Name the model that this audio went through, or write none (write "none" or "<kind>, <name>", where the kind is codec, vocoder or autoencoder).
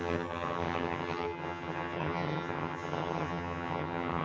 vocoder, HiFi-GAN